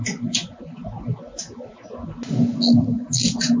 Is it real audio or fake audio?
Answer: real